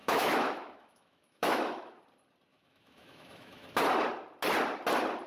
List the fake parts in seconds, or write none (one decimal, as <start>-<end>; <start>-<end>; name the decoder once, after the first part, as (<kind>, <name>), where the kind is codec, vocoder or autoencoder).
0.0-2.0 (autoencoder, DAC-VAE); 2.5-3.8